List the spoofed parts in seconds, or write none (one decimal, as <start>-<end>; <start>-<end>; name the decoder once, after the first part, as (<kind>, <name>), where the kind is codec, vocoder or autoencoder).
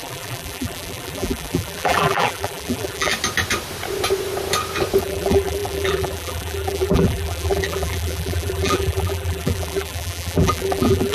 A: 0.0-3.1 (vocoder, BigVGAN v2); 5.0-11.1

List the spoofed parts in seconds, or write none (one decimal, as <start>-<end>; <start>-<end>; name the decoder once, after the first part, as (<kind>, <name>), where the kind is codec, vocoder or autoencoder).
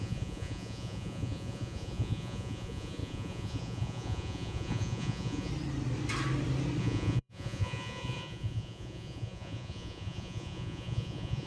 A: 0.0-5.5 (vocoder, Vocos); 6.8-11.5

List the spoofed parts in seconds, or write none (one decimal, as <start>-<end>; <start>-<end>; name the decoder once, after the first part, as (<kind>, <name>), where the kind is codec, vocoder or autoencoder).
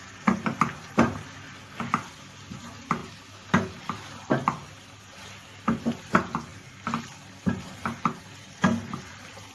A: none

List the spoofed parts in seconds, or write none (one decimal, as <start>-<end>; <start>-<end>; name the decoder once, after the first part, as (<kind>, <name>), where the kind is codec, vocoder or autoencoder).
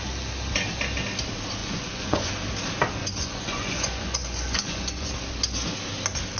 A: 1.6-2.3 (vocoder, Vocos); 3.0-5.1